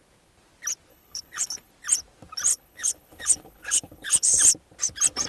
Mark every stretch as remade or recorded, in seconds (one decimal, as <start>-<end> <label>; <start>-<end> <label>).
0.0-0.9 recorded; 0.9-1.7 remade; 1.7-2.5 recorded; 2.5-4.4 remade; 4.4-5.3 recorded